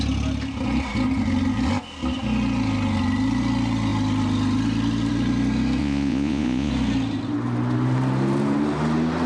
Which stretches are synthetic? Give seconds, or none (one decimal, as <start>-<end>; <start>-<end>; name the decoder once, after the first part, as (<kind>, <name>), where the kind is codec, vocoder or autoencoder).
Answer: 5.8-6.7 (vocoder, Vocos)

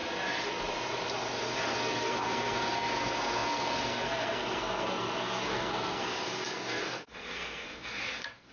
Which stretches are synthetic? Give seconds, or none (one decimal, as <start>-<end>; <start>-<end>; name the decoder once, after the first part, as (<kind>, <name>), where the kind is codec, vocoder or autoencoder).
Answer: 1.6-8.5 (codec, SNAC)

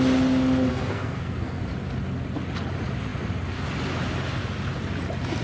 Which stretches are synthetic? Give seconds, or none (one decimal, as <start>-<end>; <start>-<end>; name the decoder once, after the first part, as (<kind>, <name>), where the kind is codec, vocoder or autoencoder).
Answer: 0.7-1.6 (codec, SNAC)

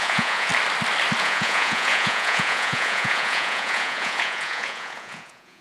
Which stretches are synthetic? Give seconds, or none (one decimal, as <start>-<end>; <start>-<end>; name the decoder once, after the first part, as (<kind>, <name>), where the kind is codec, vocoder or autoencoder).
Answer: 0.0-0.5 (vocoder, Vocos); 1.2-5.6

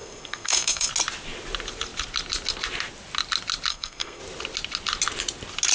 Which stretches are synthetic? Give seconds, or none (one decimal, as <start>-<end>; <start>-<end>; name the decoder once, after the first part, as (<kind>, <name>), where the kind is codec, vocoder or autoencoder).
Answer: 0.0-0.9 (codec, SNAC); 3.7-4.2

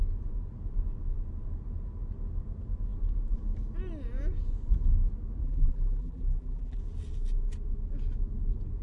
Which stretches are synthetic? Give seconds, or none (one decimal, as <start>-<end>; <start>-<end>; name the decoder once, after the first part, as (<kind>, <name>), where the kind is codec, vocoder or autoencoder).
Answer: 5.4-6.8 (vocoder, BigVGAN v2)

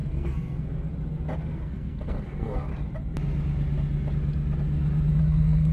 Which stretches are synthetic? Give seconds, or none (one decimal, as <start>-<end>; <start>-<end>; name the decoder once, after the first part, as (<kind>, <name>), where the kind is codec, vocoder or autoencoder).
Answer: 0.0-0.9 (codec, SNAC); 1.4-2.7; 5.2-5.7